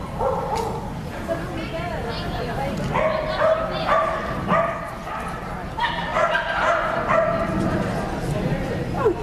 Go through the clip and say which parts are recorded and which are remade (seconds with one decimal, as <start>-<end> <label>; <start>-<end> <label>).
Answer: 0.0-9.2 recorded